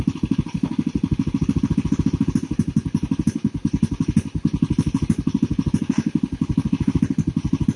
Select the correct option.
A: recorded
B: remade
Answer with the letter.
A